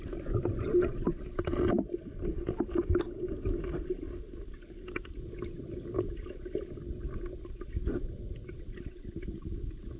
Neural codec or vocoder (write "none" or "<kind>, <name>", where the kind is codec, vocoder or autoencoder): none